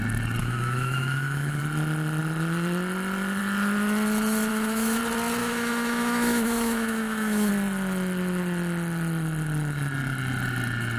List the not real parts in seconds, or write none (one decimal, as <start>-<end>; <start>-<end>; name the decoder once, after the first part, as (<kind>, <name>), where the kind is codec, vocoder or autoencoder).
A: 0.4-1.6 (autoencoder, DAC-VAE); 4.5-5.0; 5.4-7.5